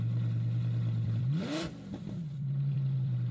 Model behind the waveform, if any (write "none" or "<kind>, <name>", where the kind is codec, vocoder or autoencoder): vocoder, BigVGAN v2